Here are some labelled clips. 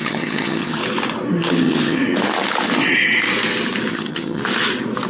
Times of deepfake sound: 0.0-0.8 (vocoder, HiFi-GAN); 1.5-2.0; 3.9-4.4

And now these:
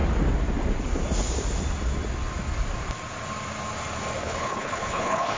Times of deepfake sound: 4.2-5.4 (codec, HILCodec)

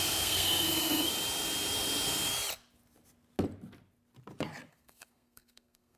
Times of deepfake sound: 0.0-1.1 (codec, SNAC); 4.7-6.0